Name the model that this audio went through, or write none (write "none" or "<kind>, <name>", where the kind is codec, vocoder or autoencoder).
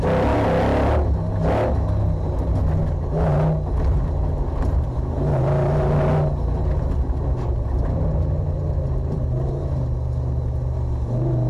none